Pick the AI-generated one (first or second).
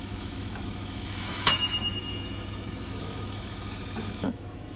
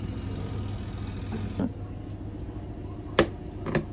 first